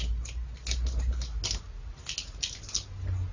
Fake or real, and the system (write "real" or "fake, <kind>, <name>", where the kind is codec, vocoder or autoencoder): real